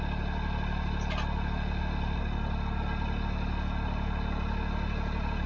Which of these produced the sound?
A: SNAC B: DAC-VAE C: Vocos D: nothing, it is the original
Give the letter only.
D